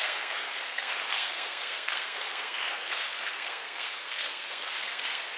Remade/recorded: remade